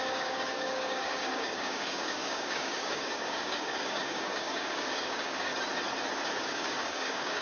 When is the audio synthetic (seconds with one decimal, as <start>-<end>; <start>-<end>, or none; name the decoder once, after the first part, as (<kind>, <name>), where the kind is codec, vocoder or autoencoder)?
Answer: 0.0-5.5 (codec, DAC); 6.4-7.4